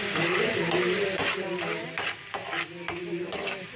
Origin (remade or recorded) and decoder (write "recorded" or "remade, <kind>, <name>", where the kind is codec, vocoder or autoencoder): recorded